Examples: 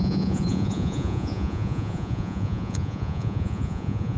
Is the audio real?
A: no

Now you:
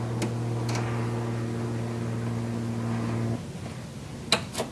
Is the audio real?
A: yes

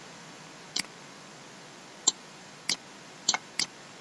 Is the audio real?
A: no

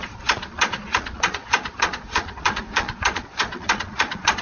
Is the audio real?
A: no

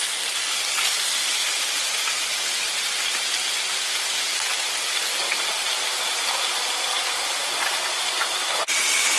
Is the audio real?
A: yes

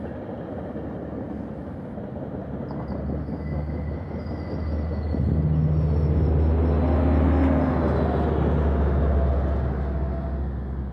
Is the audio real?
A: yes